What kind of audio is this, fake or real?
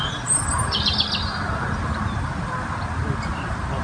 real